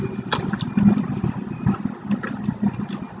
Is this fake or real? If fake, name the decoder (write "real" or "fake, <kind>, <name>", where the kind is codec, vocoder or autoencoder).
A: real